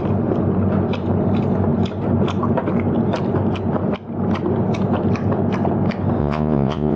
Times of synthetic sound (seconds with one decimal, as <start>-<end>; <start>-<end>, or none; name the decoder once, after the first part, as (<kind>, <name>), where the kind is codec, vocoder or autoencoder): 6.2-7.0 (vocoder, Vocos)